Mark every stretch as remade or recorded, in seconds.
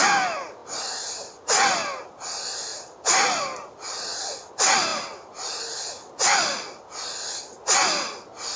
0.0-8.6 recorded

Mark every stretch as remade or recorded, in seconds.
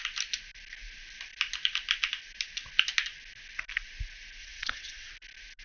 0.0-4.4 recorded; 4.4-5.1 remade; 5.1-5.6 recorded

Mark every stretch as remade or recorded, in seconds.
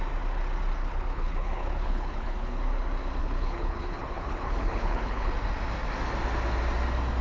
0.0-0.8 recorded; 0.8-2.6 remade; 2.6-3.2 recorded; 3.2-5.3 remade; 5.3-7.2 recorded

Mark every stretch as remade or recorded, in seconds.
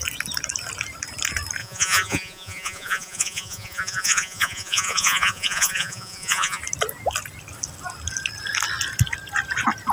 0.0-1.6 recorded; 1.6-6.6 remade; 6.6-9.9 recorded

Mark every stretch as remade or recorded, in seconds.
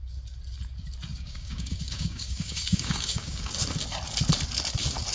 0.0-1.1 recorded; 1.1-3.5 remade; 3.5-5.1 recorded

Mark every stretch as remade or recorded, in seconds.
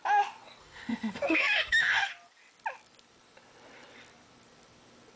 0.0-0.6 recorded; 0.6-2.1 remade; 2.1-5.2 recorded